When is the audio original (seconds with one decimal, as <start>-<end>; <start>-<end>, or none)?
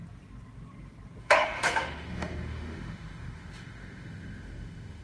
0.0-1.2